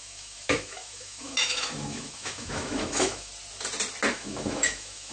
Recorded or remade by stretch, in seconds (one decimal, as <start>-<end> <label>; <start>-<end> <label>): 0.0-3.3 remade; 3.3-4.1 recorded; 4.1-5.1 remade